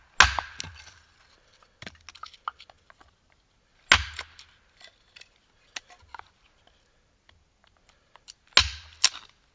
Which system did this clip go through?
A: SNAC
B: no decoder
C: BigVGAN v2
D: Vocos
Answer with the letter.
B